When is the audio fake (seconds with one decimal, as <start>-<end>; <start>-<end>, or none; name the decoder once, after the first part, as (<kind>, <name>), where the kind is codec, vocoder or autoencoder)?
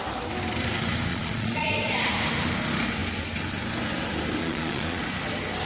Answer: 1.1-1.7 (vocoder, Vocos); 4.4-5.0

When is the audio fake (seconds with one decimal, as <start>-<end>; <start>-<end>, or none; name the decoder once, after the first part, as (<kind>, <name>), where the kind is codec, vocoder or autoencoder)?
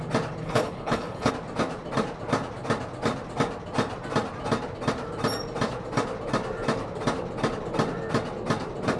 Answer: 0.4-1.3 (codec, HILCodec)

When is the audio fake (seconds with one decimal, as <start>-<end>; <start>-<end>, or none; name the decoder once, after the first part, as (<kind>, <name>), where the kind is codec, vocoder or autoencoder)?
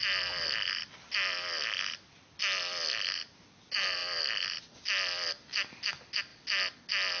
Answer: none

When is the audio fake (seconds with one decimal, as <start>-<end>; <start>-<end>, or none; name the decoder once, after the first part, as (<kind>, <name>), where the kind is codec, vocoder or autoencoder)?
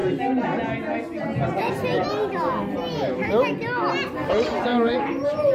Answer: 4.7-5.5 (vocoder, BigVGAN v2)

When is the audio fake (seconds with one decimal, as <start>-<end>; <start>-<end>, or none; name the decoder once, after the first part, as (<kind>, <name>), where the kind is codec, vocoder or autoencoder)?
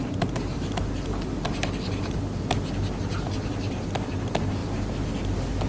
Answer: none